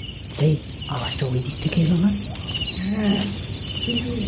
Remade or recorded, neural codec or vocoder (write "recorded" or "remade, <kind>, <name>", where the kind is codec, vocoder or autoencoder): recorded